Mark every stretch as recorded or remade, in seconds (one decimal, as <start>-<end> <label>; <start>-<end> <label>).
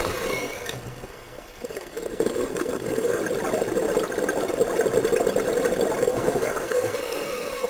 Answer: 0.0-3.2 remade; 3.2-6.0 recorded; 6.0-7.7 remade